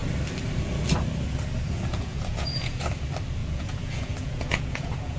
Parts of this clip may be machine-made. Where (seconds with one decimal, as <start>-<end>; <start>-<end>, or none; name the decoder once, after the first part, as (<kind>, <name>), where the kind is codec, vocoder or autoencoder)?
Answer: 1.9-2.9 (vocoder, Vocos); 3.4-5.2